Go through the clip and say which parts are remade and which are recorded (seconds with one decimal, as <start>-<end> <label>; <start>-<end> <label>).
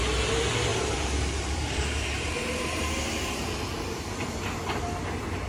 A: 0.0-0.7 recorded; 0.7-2.9 remade; 2.9-5.5 recorded